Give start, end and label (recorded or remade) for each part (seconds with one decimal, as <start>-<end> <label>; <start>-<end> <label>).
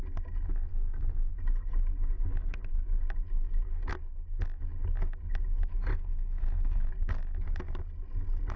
0.0-0.7 recorded; 0.7-1.3 remade; 1.3-5.9 recorded; 5.9-6.9 remade; 6.9-8.6 recorded